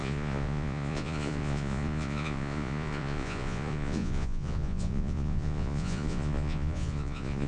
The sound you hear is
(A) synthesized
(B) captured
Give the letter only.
A